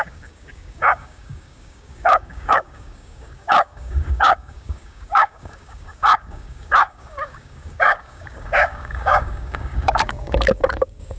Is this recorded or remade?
remade